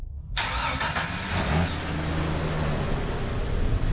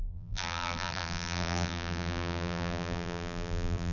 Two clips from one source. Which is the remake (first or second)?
second